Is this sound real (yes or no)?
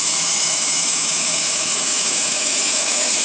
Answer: no